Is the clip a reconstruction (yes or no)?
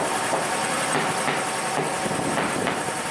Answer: no